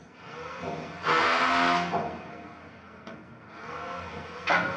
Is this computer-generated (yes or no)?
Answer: yes